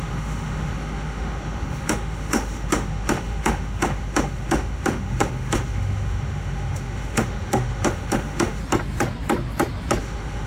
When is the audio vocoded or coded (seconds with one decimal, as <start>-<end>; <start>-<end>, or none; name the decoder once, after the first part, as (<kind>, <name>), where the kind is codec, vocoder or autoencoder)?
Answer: 0.0-8.6 (autoencoder, DAC-VAE); 10.0-10.5